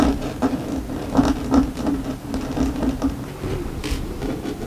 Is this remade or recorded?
recorded